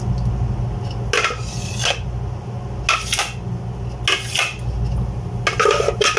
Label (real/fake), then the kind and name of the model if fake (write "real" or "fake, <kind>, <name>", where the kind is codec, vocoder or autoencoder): real